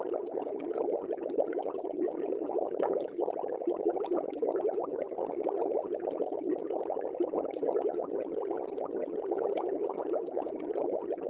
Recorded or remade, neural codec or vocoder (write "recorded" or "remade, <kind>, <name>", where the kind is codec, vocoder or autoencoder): remade, vocoder, HiFi-GAN